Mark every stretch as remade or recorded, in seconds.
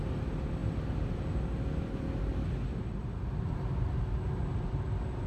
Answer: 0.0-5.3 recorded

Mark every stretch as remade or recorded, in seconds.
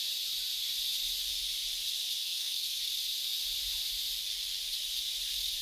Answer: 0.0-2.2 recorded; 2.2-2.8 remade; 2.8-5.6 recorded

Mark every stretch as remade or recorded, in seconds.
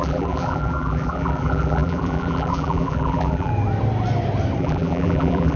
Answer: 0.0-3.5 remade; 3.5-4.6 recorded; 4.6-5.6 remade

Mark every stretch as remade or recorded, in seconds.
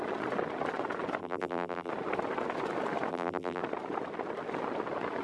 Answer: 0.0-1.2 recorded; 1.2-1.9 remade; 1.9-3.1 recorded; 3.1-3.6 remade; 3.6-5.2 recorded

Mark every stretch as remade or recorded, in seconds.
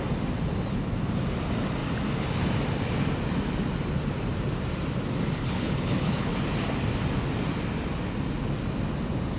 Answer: 0.0-5.4 recorded; 5.4-6.3 remade; 6.3-9.4 recorded